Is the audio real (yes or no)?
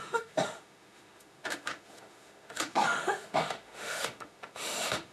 no